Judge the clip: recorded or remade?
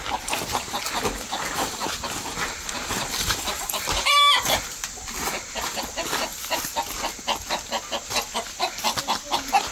recorded